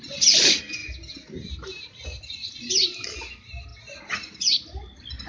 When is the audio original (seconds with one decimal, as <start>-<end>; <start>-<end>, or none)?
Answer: 0.0-5.3